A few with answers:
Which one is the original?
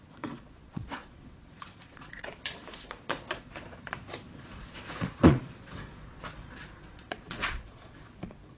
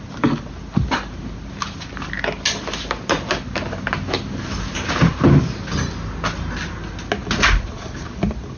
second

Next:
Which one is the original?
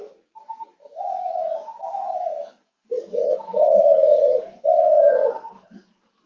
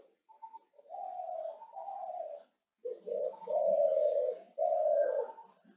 second